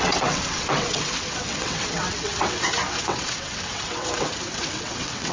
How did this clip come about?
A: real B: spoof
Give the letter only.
B